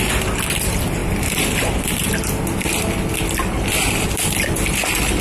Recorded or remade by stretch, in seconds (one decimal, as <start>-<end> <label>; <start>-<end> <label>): 0.0-5.2 remade